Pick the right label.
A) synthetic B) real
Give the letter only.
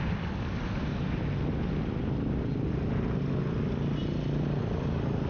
B